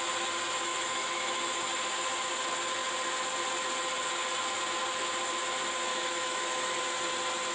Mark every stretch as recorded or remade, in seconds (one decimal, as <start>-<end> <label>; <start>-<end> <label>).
0.0-0.7 recorded; 0.7-1.7 remade; 1.7-5.9 recorded; 5.9-6.8 remade; 6.8-7.5 recorded